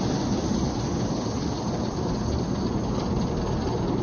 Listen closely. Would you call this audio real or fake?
real